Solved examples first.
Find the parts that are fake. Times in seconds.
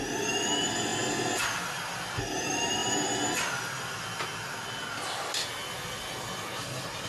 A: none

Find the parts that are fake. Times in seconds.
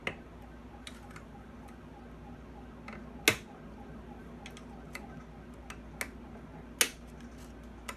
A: none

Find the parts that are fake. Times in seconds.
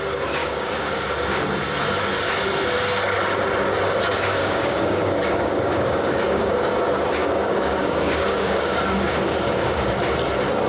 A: 0.4-1.1 (codec, DAC); 4.4-6.5; 7.2-9.9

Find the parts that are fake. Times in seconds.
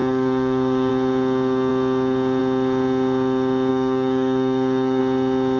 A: 0.0-0.9 (codec, DAC); 3.7-5.0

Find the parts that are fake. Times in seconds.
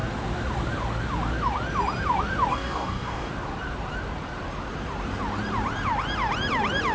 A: 2.5-3.3 (codec, DAC)